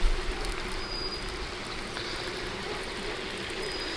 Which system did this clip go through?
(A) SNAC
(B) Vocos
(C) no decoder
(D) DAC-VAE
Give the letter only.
C